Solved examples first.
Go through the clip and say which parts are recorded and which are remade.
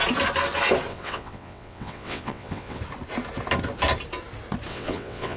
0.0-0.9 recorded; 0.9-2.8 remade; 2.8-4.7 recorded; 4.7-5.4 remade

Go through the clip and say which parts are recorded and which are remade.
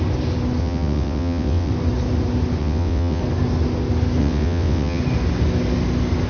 0.0-0.6 recorded; 0.6-1.7 remade; 1.7-2.6 recorded; 2.6-3.2 remade; 3.2-4.2 recorded; 4.2-5.0 remade; 5.0-6.3 recorded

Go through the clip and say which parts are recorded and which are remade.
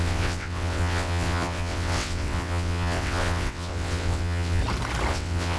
0.0-4.6 remade; 4.6-5.1 recorded; 5.1-5.6 remade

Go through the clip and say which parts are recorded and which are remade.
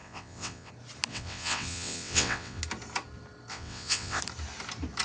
0.0-0.7 remade; 0.7-1.1 recorded; 1.1-2.6 remade; 2.6-3.5 recorded; 3.5-4.2 remade; 4.2-5.0 recorded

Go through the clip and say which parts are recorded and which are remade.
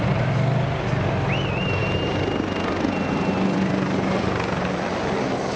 0.0-5.6 recorded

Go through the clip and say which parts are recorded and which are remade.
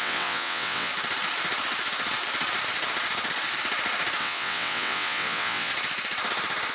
0.0-0.9 remade; 0.9-4.2 recorded; 4.2-5.7 remade; 5.7-6.7 recorded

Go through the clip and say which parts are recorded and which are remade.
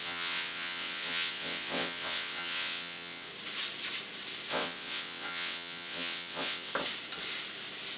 0.0-3.3 remade; 3.3-4.5 recorded; 4.5-6.7 remade; 6.7-8.0 recorded